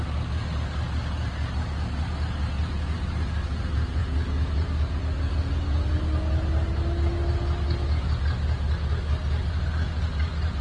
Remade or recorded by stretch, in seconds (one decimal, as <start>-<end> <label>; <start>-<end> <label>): 0.0-10.6 recorded